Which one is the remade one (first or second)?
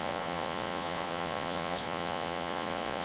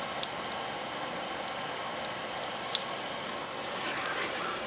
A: first